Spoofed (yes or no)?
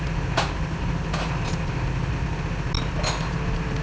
no